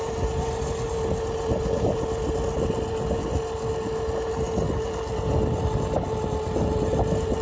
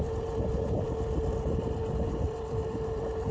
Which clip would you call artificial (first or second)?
second